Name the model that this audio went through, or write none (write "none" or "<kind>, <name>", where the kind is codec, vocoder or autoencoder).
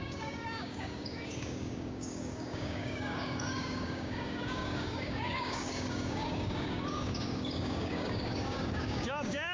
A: codec, DAC